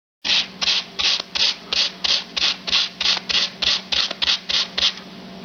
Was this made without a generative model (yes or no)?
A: yes